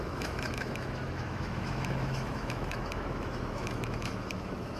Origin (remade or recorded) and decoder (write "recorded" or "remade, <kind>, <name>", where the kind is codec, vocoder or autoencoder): remade, autoencoder, DAC-VAE